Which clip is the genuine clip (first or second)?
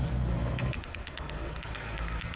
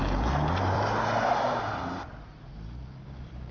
second